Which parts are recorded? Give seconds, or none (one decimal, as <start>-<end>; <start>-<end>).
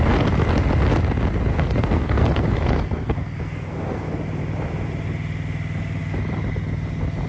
0.0-1.5; 4.1-7.3